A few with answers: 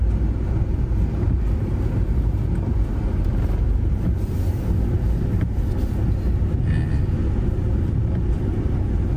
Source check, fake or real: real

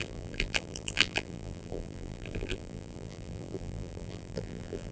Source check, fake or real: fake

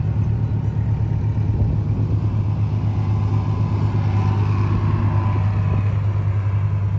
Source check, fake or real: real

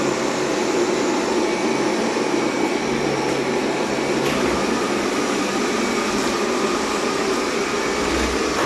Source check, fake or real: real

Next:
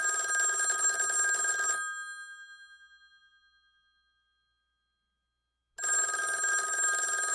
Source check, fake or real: real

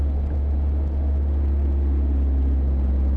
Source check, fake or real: real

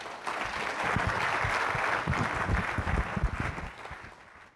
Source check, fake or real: real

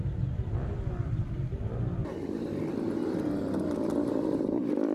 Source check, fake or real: real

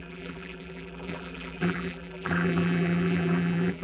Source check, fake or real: fake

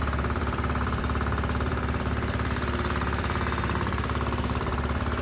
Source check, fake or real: fake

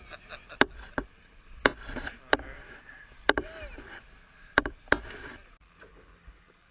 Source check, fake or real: fake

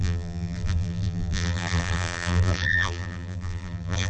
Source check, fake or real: fake